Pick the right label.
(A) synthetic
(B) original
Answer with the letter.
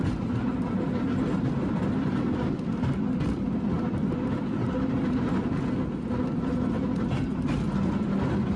B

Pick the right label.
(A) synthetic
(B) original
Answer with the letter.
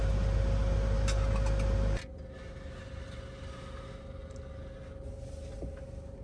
B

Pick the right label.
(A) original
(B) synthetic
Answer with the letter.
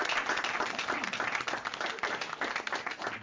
A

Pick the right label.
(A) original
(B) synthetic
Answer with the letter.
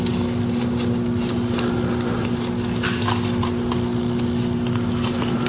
A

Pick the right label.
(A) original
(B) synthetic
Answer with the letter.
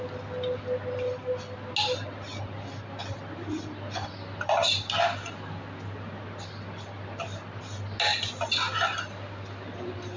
A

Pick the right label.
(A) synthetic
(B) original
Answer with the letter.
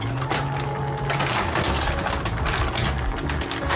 B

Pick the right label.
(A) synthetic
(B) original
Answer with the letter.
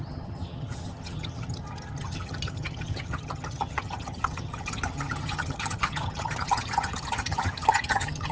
A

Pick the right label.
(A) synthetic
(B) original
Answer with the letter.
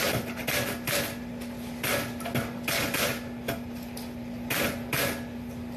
B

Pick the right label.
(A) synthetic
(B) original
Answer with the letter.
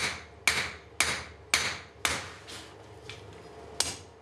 B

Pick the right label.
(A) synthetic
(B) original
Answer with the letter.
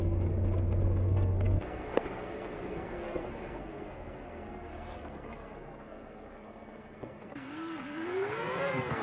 A